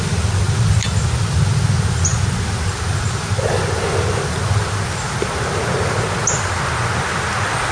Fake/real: real